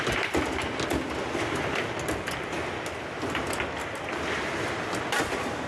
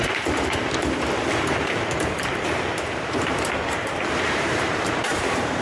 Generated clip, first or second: second